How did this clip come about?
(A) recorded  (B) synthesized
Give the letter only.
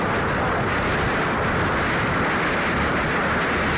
A